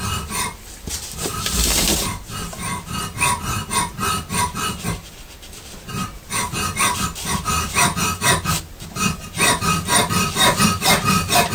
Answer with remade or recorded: recorded